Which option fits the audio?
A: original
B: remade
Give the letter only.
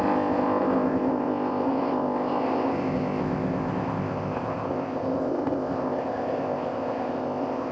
B